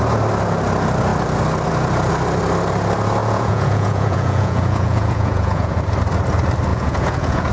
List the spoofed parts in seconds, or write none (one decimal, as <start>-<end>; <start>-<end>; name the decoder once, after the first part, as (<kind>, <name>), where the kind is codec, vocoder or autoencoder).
3.2-5.8 (vocoder, Vocos); 6.7-7.5